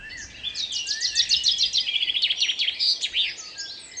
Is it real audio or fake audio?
real